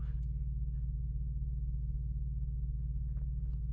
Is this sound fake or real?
real